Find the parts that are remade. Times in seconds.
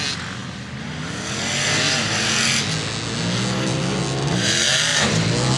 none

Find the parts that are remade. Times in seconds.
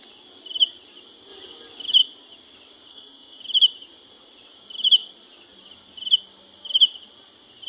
2.9-3.4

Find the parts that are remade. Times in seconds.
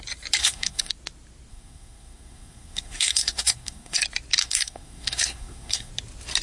0.4-0.9; 1.5-4.0; 4.4-5.9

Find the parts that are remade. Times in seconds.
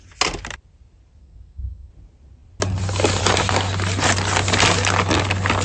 1.2-1.9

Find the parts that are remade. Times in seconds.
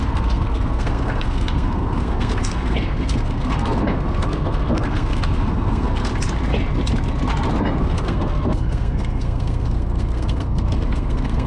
0.0-6.1; 7.8-11.5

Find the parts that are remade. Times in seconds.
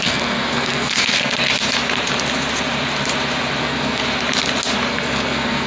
0.0-1.3; 3.6-4.0; 4.9-5.7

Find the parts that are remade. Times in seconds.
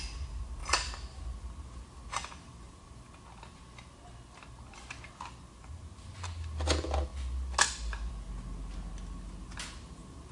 none